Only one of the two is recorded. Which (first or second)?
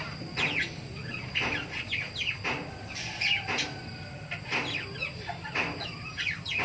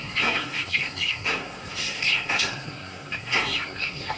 first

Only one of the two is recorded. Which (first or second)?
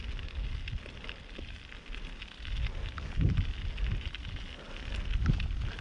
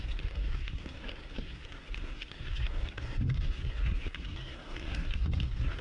first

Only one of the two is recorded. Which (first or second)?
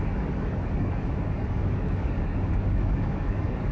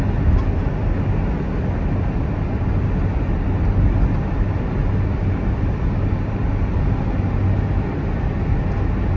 second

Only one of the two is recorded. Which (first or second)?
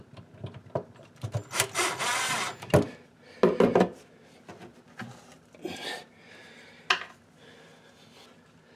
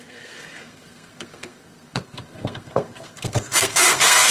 first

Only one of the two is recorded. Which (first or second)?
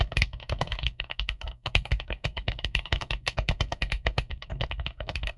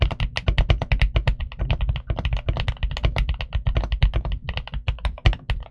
second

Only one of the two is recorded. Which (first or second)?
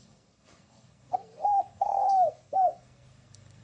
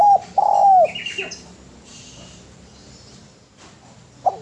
second